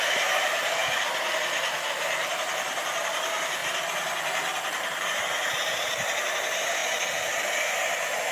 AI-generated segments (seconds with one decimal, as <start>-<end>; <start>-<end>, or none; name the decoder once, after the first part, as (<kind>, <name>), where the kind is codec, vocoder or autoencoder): 0.0-0.8 (vocoder, BigVGAN v2); 2.3-3.6; 5.5-6.8; 7.6-8.3